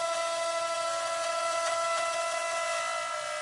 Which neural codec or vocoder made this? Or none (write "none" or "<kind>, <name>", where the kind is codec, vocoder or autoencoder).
none